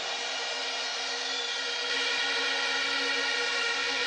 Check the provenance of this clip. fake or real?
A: real